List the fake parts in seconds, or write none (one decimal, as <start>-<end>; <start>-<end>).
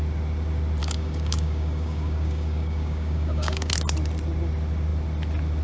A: 0.8-3.7